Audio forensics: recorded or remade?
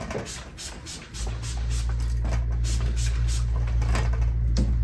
recorded